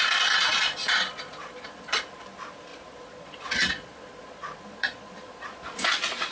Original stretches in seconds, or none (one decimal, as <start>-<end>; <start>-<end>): 0.0-0.5; 2.0-2.7; 5.6-6.3

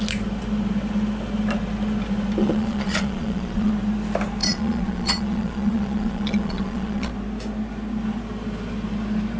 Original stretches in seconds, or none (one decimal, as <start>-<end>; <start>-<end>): 0.0-2.4; 3.7-4.4; 7.1-9.4

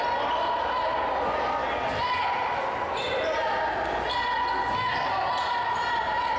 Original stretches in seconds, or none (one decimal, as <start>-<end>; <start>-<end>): 0.0-6.4

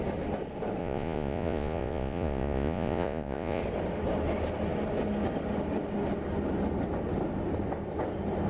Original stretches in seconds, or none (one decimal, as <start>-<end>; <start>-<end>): 0.0-0.8; 3.6-8.5

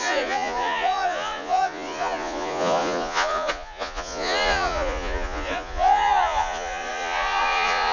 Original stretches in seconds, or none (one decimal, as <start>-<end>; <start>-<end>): none

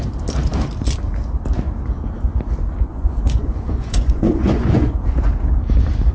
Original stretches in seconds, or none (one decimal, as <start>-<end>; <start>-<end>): 0.0-2.9; 5.3-6.1

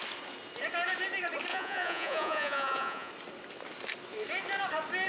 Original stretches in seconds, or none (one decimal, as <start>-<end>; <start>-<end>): 0.0-1.5; 3.1-5.1

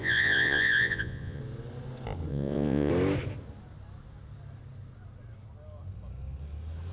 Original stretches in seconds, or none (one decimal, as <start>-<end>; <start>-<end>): 1.4-2.3; 2.9-6.9